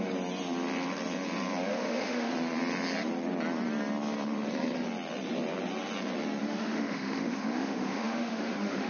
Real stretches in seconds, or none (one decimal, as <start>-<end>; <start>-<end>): 0.0-1.7; 2.3-6.4